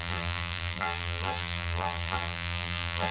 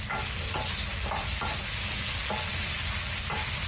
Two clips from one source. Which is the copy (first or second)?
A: first